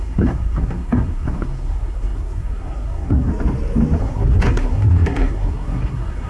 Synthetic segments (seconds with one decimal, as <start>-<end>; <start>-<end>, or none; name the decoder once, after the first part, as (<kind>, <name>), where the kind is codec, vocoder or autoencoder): 0.0-3.3 (codec, SNAC); 4.0-6.3